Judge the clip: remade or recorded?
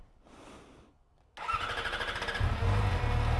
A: recorded